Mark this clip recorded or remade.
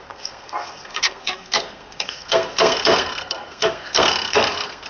remade